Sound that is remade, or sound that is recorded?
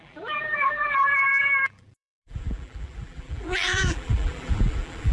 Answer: remade